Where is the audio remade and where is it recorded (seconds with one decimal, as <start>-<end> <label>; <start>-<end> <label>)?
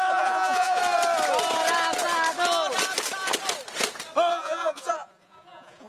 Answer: 0.0-0.8 remade; 0.8-4.3 recorded; 4.3-5.9 remade